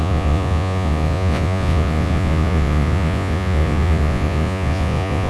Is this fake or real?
fake